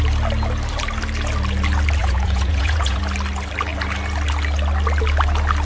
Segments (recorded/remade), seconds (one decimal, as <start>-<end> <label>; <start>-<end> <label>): 0.0-2.0 recorded; 2.0-3.0 remade; 3.0-5.6 recorded